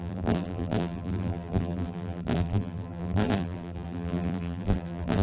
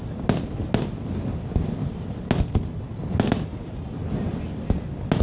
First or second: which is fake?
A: first